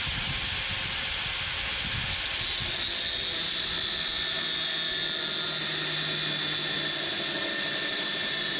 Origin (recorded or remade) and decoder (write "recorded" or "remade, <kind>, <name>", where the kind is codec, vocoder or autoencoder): recorded